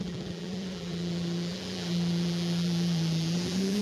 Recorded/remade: remade